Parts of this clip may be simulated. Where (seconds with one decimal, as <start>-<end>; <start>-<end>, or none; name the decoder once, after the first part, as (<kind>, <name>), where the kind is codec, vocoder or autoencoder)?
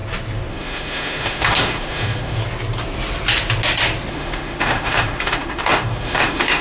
0.5-2.4 (autoencoder, DAC-VAE); 4.1-6.6